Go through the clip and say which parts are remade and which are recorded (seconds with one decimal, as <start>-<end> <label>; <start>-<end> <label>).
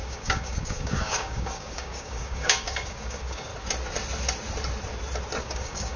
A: 0.0-3.5 remade; 3.5-5.4 recorded; 5.4-6.0 remade